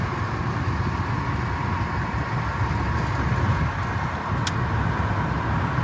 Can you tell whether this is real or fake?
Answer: real